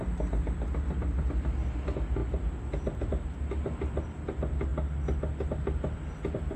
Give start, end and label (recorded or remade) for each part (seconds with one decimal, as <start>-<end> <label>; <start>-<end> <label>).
0.0-6.6 recorded